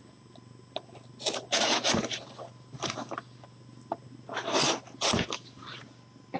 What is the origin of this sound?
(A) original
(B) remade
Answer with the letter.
A